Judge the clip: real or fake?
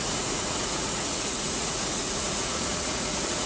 fake